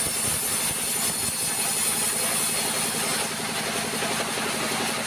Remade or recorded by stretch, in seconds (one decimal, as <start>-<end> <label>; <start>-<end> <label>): 0.0-5.1 recorded